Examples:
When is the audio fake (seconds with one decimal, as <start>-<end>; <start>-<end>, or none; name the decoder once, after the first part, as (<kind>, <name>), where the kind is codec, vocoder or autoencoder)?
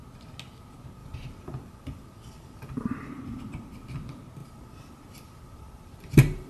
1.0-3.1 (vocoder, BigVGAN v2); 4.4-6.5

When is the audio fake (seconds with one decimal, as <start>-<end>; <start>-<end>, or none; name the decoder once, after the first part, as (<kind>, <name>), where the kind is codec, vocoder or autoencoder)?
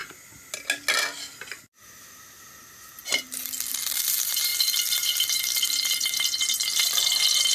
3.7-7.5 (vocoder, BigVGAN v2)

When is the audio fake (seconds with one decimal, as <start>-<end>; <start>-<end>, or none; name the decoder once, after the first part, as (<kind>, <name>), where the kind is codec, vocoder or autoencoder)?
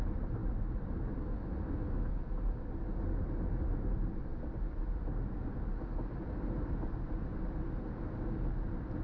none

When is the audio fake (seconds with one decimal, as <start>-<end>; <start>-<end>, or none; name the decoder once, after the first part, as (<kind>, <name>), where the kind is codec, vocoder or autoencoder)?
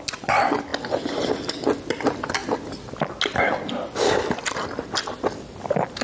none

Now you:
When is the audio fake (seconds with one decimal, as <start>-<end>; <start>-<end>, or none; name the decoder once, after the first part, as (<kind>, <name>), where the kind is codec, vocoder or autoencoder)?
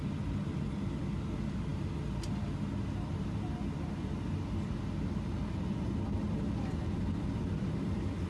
none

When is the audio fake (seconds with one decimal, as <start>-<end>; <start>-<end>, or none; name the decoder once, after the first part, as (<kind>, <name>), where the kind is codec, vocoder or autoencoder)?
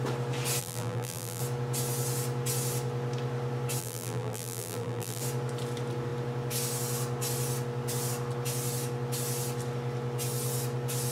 0.6-1.4 (vocoder, BigVGAN v2); 3.8-5.2